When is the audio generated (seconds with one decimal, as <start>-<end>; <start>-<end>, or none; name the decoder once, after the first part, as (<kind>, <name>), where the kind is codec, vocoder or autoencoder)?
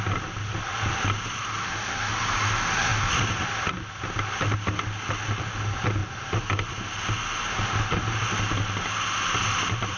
none